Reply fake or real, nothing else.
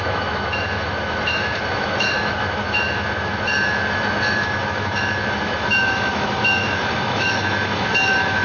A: fake